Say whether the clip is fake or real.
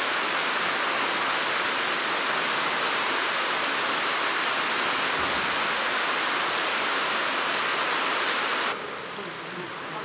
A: real